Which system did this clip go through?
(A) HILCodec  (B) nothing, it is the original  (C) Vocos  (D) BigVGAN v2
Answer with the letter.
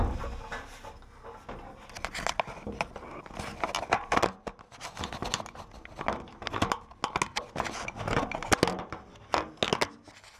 B